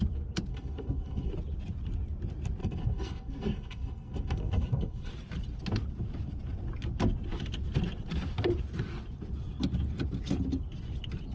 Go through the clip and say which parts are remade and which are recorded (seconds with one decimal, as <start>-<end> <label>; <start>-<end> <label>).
0.0-0.5 recorded; 0.5-1.3 remade; 1.3-2.6 recorded; 2.6-5.1 remade; 5.1-11.3 recorded